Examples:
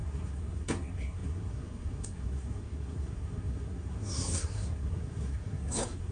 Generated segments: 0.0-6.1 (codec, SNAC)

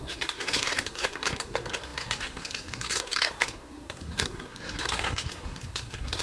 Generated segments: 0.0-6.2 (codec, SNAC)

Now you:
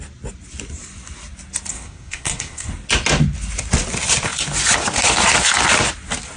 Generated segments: 1.7-2.7 (codec, SNAC)

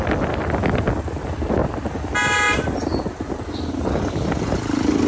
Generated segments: none